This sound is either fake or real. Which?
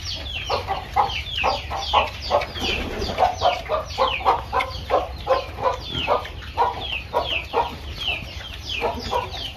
real